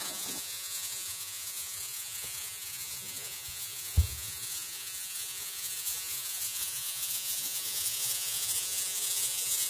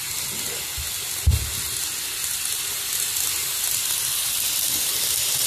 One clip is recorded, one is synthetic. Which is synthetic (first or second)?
first